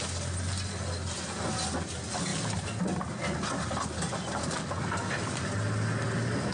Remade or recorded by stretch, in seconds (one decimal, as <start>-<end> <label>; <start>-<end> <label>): 0.0-6.5 recorded

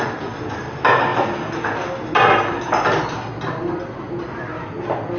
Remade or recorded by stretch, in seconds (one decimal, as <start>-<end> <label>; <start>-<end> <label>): 0.0-5.2 recorded

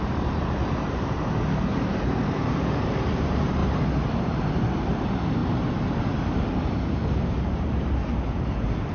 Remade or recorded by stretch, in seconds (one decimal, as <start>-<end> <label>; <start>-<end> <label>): 0.0-3.6 remade; 3.6-4.2 recorded; 4.2-8.1 remade; 8.1-8.9 recorded

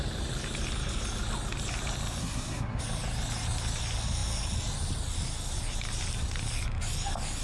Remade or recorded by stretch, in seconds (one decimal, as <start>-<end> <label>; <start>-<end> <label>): 0.0-2.2 recorded; 2.2-2.8 remade; 2.8-7.4 recorded

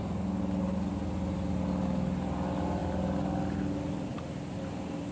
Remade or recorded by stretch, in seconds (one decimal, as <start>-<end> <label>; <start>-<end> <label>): 0.0-5.1 recorded

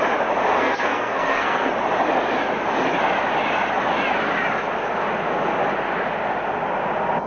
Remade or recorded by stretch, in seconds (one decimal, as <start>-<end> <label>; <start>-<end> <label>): 0.0-0.5 recorded; 0.5-1.7 remade; 1.7-7.3 recorded

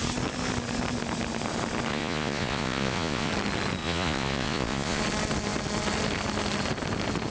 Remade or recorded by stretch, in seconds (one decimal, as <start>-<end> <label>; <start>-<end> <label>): 0.0-1.9 recorded; 1.9-3.3 remade; 3.3-3.8 recorded; 3.8-5.0 remade; 5.0-7.3 recorded

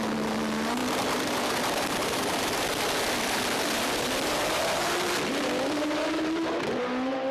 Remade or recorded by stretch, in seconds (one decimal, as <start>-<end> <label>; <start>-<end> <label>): 0.0-0.8 recorded; 0.8-4.6 remade; 4.6-7.3 recorded